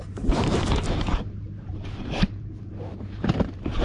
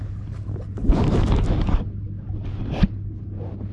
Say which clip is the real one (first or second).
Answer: second